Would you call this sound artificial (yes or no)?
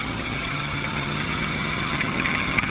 yes